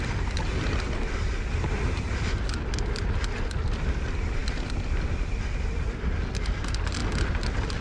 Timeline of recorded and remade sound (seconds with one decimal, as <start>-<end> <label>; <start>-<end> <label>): 0.0-7.8 recorded